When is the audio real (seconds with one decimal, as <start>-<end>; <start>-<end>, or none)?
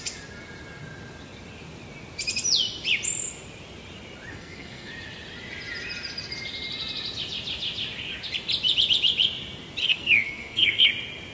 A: 0.0-4.3; 4.9-9.8; 10.9-11.3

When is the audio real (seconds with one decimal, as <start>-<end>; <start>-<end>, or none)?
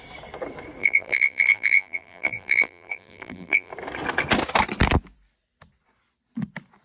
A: 0.0-0.8; 3.7-6.8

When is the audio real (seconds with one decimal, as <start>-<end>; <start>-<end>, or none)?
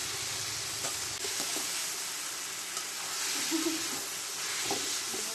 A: 0.0-0.9; 1.8-5.3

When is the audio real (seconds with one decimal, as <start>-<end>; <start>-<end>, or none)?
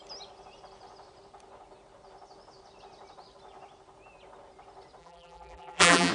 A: 0.0-5.0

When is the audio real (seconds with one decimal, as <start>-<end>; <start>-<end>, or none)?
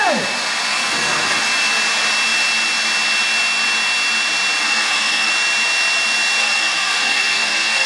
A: 0.0-0.7; 1.4-4.6; 5.3-6.4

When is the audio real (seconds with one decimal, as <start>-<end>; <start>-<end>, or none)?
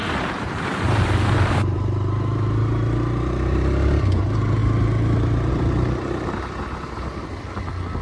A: 1.8-8.0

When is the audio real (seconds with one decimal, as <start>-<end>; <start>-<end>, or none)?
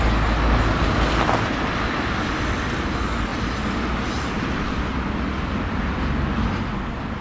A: 0.0-7.2